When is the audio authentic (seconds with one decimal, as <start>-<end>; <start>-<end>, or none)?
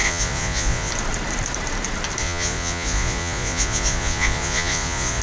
0.9-2.2